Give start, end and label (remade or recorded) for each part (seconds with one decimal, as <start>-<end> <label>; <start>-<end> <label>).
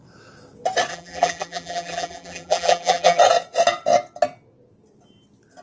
0.0-0.9 recorded; 0.9-3.2 remade; 3.2-5.6 recorded